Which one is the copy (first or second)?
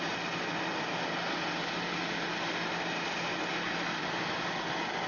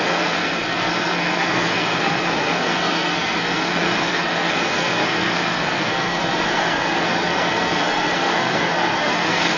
second